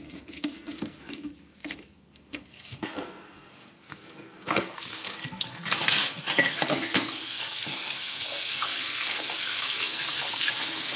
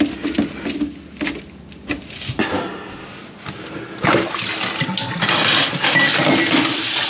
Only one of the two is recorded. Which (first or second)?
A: second